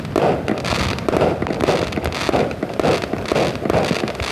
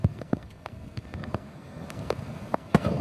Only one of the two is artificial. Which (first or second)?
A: second